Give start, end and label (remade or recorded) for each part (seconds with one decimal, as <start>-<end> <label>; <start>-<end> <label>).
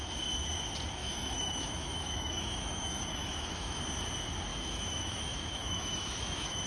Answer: 0.0-1.0 recorded; 1.0-3.8 remade; 3.8-4.5 recorded; 4.5-6.7 remade